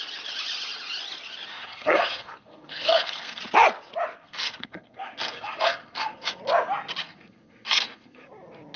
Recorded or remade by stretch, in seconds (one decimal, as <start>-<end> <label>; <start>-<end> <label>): 0.0-1.5 recorded; 1.5-3.4 remade; 3.4-4.2 recorded; 4.2-6.4 remade; 6.4-7.0 recorded; 7.0-8.3 remade; 8.3-8.8 recorded